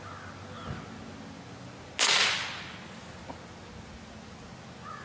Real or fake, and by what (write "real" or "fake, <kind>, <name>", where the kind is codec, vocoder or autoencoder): real